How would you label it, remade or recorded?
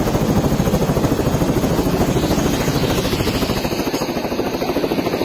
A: recorded